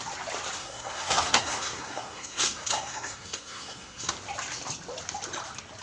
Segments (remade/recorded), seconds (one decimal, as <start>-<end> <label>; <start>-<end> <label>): 0.0-0.6 recorded; 0.6-4.1 remade; 4.1-5.8 recorded